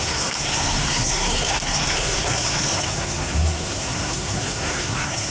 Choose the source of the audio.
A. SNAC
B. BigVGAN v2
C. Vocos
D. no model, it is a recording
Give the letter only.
A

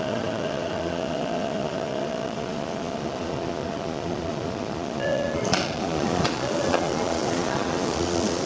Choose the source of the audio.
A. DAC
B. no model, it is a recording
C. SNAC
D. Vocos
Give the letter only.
D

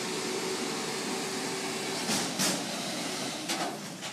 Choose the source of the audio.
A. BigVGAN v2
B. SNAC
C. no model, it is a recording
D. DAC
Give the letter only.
C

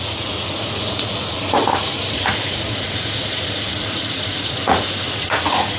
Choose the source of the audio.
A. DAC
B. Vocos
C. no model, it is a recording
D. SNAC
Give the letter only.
B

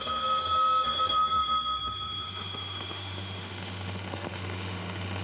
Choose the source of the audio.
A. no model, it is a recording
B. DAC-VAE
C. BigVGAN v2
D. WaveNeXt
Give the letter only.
B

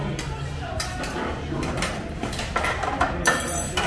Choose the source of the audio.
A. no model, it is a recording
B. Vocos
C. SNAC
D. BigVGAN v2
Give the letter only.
A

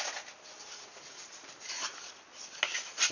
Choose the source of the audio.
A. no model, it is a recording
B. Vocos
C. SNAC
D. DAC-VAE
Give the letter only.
A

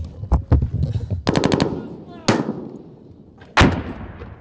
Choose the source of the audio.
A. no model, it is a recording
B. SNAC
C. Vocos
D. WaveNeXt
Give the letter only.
A